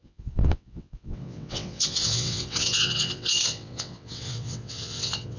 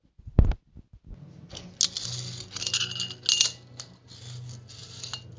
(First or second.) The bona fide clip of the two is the second